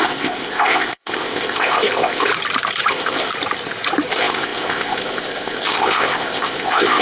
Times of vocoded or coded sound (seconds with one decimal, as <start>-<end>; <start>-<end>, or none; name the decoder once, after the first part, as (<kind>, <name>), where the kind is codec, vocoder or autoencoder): 0.0-2.3 (codec, ZipCodec); 2.9-3.3; 4.1-7.0

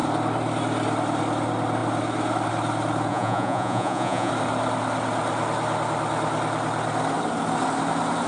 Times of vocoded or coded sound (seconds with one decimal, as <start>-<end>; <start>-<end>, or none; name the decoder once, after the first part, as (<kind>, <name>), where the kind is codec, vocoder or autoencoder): 3.1-4.3 (vocoder, Vocos)

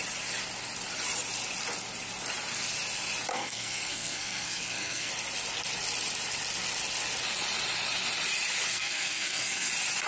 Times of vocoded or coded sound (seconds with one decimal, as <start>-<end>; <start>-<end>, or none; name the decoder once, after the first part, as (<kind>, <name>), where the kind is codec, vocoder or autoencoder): 3.3-5.1 (codec, SNAC); 8.7-9.7

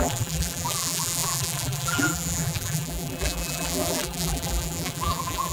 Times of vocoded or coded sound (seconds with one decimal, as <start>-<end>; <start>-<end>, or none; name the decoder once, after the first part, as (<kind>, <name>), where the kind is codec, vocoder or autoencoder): 0.0-5.5 (vocoder, BigVGAN v2)

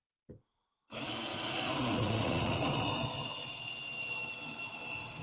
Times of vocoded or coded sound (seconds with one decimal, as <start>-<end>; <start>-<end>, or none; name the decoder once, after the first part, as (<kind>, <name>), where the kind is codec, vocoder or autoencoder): 1.3-2.9 (vocoder, Vocos)

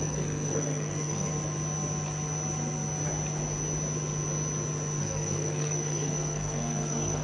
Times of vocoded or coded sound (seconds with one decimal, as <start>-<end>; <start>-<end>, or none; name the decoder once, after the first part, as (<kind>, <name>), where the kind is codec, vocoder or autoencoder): 0.0-1.3 (codec, SNAC); 5.0-7.2

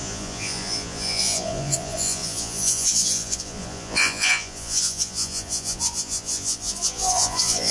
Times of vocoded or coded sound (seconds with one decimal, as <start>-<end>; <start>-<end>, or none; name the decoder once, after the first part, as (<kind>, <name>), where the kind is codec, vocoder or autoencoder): 0.0-7.7 (vocoder, Vocos)